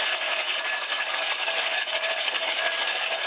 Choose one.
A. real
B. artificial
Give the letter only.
B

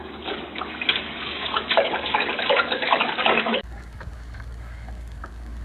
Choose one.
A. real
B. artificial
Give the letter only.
B